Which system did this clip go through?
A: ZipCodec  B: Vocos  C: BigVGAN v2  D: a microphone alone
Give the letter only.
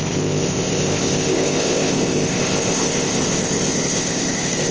A